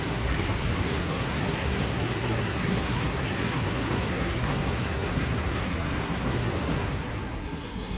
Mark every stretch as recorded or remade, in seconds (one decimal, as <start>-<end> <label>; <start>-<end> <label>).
0.0-8.0 remade